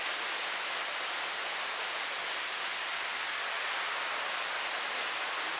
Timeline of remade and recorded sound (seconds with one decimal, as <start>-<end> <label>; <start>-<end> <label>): 0.0-5.6 recorded